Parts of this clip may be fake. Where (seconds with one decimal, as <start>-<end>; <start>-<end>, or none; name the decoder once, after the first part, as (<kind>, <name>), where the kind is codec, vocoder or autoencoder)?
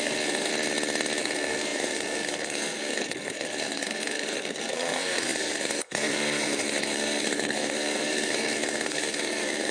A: 0.0-0.5 (codec, SNAC); 1.2-9.7